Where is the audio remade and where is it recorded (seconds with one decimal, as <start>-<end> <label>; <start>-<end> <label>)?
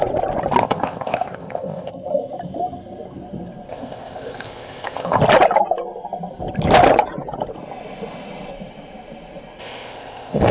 0.0-0.6 recorded; 0.6-1.9 remade; 1.9-3.7 recorded; 3.7-5.2 remade; 5.2-9.6 recorded; 9.6-10.5 remade